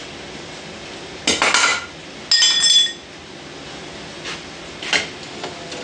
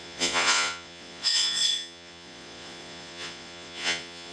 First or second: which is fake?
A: second